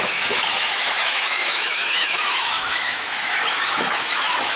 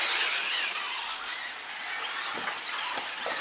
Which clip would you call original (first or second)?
second